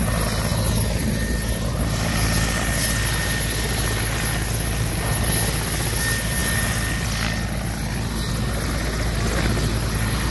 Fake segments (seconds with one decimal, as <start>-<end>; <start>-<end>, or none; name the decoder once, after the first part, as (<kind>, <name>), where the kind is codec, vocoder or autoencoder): none